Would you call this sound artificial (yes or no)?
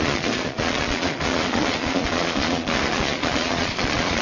yes